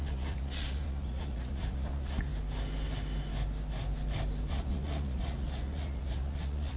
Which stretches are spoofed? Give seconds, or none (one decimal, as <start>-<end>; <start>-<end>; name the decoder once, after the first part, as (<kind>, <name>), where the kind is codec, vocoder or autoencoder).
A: 0.0-2.3 (vocoder, Vocos); 4.5-6.8